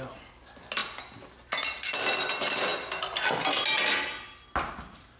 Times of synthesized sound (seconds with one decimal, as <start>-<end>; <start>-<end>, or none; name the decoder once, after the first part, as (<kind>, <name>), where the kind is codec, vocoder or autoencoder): none